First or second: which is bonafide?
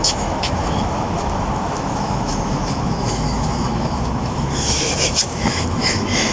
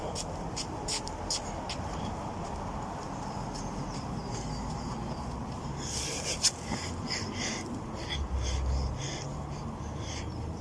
second